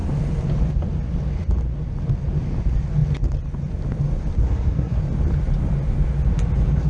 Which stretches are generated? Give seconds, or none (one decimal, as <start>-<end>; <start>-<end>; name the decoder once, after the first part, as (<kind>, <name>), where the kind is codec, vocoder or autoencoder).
4.4-5.0 (codec, SNAC)